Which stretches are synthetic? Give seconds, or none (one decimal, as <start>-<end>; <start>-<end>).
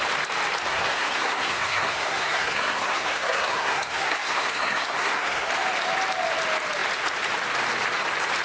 0.7-5.5